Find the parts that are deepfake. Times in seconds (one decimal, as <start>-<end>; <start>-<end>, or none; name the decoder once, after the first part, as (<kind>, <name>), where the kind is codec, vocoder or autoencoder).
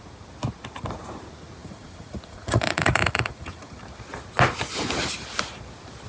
1.6-3.8 (vocoder, Vocos)